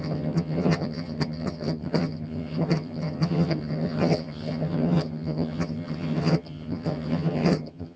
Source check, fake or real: fake